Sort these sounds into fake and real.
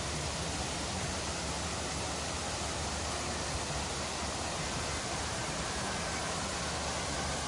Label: real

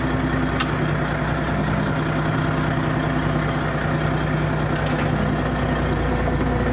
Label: real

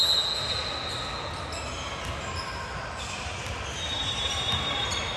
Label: real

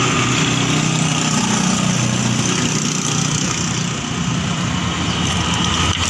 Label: real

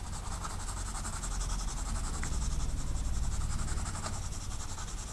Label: real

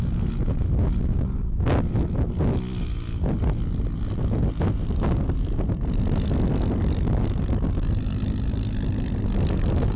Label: real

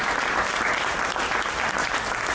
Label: real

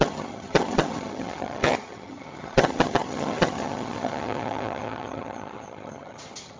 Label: fake